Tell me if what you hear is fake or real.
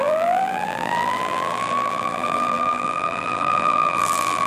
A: fake